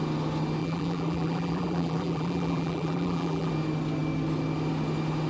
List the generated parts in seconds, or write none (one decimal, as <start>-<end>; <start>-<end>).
0.6-3.5

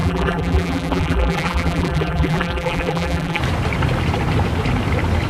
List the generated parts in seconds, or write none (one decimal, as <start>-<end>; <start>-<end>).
0.0-3.4